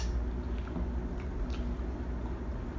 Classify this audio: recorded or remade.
recorded